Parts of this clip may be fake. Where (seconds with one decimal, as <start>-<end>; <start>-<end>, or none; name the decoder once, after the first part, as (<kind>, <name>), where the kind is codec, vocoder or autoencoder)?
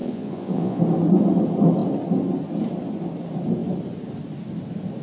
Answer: 0.0-0.8 (vocoder, Vocos)